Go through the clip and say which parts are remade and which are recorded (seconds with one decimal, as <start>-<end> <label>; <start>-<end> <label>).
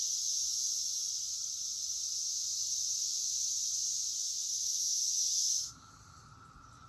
0.0-4.2 recorded; 4.2-5.7 remade; 5.7-6.9 recorded